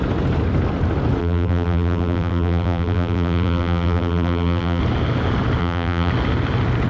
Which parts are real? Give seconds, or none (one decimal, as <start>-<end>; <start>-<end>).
0.0-1.2; 4.8-5.6; 6.1-6.9